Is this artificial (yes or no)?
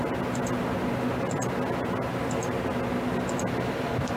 no